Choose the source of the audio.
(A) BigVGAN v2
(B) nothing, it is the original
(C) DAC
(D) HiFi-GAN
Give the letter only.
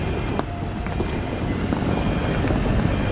B